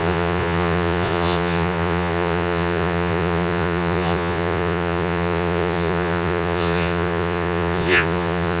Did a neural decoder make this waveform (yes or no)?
yes